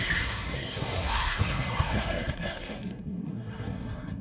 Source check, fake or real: fake